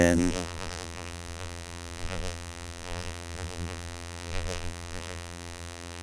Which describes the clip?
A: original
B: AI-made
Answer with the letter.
B